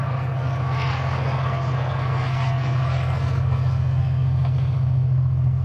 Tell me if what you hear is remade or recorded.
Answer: remade